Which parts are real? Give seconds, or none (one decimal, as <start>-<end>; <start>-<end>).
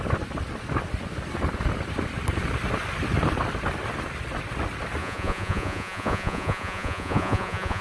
0.0-5.0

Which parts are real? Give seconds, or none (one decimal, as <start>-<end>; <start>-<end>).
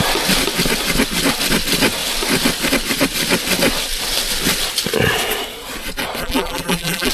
0.0-6.2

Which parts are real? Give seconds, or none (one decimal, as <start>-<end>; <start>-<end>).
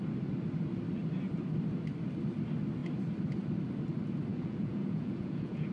0.0-4.3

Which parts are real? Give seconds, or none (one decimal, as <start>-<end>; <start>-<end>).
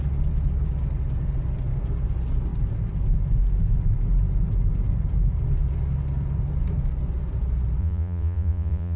0.0-7.8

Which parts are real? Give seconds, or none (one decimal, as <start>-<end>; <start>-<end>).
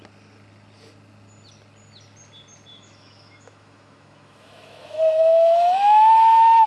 0.0-2.7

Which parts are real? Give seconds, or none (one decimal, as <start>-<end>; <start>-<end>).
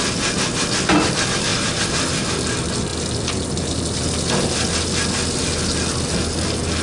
0.0-6.8